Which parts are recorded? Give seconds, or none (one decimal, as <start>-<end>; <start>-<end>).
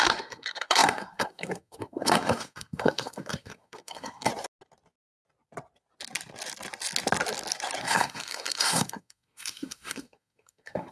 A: 4.3-7.8